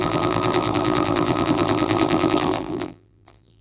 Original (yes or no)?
no